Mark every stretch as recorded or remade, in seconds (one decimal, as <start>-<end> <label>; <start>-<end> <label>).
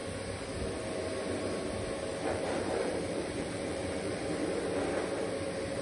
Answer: 0.0-2.1 recorded; 2.1-4.2 remade; 4.2-5.8 recorded